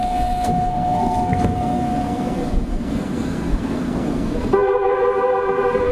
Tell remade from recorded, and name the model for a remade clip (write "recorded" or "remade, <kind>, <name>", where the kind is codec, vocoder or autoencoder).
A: remade, codec, SNAC